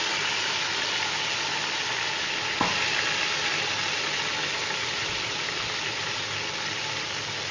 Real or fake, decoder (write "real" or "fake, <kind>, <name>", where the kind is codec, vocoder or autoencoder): real